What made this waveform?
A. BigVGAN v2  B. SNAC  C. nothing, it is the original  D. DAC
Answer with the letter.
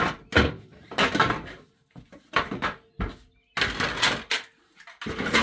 C